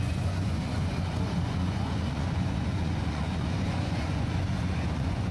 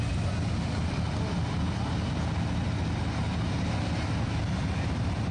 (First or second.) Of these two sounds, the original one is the second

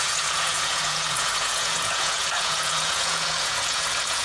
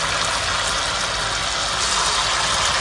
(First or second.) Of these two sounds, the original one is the second